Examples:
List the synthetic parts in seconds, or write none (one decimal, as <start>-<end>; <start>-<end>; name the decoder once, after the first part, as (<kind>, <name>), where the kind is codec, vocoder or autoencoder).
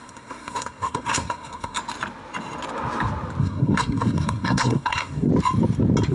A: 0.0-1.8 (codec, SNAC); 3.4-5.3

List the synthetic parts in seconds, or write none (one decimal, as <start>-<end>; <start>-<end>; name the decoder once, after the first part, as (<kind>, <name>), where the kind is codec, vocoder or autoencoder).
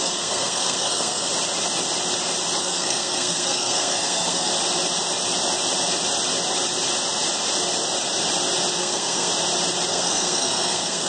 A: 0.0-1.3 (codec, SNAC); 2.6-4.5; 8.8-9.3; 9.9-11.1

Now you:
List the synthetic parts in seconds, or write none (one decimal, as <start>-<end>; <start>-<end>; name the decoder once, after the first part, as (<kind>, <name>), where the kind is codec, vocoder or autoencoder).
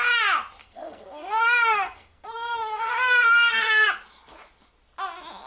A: 0.6-3.9 (codec, SNAC)